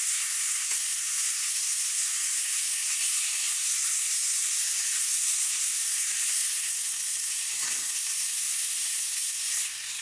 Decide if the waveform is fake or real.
fake